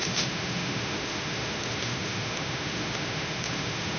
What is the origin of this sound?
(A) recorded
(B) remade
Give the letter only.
B